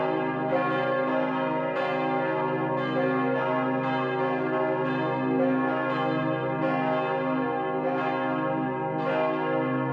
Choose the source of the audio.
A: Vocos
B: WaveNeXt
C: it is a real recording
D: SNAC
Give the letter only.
C